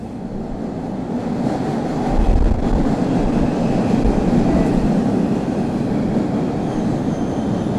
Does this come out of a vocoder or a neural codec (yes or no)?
no